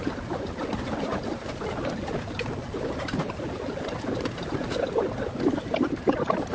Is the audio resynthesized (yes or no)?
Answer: no